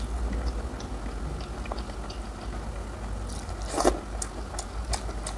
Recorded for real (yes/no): yes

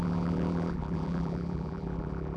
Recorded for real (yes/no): no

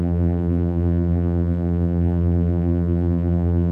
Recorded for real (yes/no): no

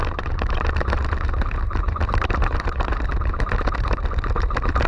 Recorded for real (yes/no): no